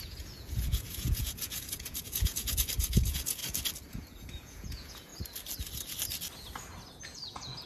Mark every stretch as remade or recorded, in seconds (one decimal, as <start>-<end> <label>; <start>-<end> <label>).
0.0-3.4 remade; 3.4-3.9 recorded; 3.9-5.1 remade; 5.1-6.9 recorded; 6.9-7.7 remade